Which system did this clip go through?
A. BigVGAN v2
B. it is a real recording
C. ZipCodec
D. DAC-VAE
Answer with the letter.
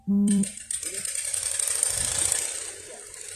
A